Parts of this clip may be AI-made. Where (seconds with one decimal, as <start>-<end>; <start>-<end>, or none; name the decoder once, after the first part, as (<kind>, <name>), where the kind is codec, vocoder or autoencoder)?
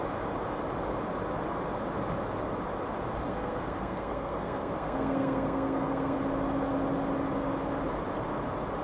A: 3.3-6.2 (codec, SNAC)